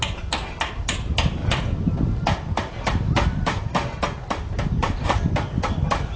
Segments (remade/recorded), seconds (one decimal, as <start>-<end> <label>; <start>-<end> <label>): 0.0-6.2 recorded